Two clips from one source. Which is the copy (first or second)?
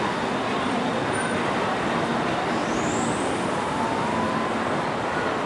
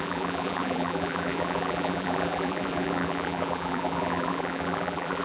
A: second